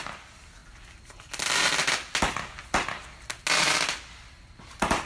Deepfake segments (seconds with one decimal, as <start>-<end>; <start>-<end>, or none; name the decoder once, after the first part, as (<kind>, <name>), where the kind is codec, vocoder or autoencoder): none